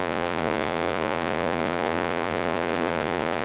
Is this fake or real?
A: fake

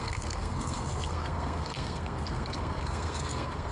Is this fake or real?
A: fake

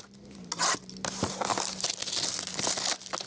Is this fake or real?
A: real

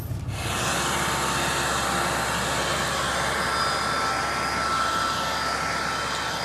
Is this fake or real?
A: real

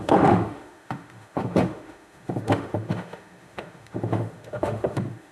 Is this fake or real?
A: fake